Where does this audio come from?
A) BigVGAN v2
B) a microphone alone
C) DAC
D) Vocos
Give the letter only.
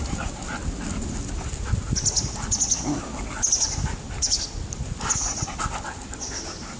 B